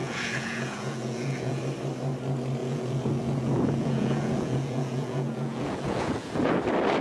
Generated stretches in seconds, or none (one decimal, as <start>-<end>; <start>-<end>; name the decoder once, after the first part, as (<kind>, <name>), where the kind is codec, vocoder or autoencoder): 0.0-1.6 (vocoder, Vocos); 2.6-6.5